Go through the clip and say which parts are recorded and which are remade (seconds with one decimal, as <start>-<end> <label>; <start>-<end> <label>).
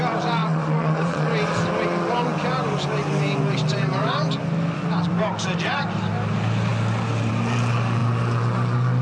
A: 0.0-0.4 recorded; 0.4-1.3 remade; 1.3-9.0 recorded